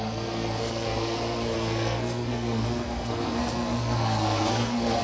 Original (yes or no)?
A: no